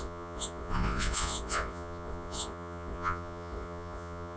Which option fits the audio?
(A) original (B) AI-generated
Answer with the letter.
B